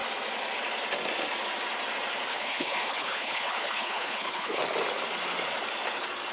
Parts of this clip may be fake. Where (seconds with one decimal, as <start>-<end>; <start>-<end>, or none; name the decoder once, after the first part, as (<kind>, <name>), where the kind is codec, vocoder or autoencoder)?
2.3-4.6 (codec, HILCodec)